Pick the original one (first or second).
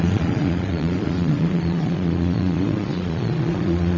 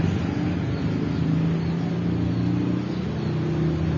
second